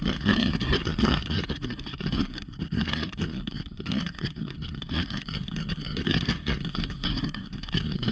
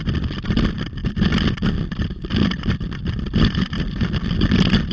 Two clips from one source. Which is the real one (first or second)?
second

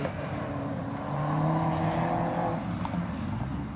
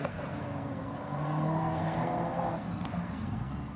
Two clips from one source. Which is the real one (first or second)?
first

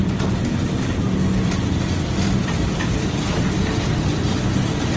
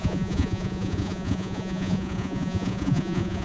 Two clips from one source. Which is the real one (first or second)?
first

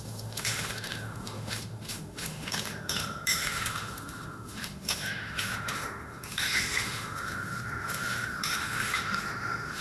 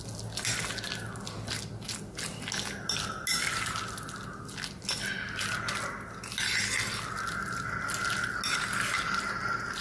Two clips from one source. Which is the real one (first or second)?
second